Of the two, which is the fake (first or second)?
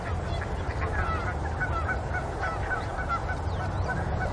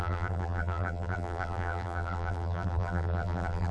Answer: second